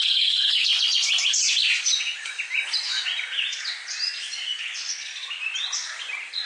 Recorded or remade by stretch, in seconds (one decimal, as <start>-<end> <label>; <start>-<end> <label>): 0.0-0.7 remade; 0.7-4.6 recorded; 4.6-5.1 remade; 5.1-6.5 recorded